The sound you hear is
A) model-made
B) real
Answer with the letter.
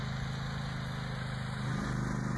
B